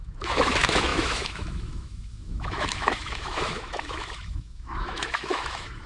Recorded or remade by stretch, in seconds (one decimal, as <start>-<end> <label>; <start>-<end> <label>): 0.0-5.9 remade